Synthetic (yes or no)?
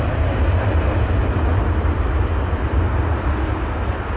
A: no